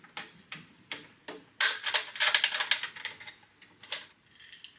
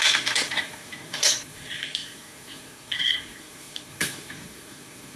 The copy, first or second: second